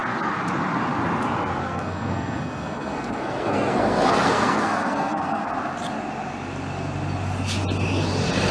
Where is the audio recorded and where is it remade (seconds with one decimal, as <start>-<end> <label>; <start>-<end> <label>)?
0.0-1.6 recorded; 1.6-5.5 remade; 5.5-8.5 recorded